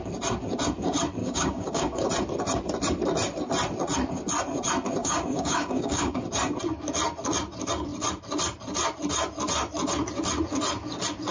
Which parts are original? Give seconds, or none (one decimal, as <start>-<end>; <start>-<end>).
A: 0.0-1.2; 2.1-5.0; 6.2-11.3